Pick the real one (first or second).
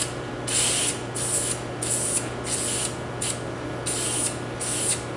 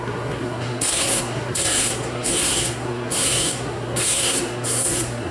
first